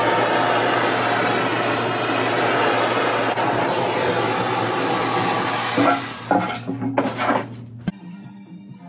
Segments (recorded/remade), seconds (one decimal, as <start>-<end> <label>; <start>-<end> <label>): 0.0-8.9 recorded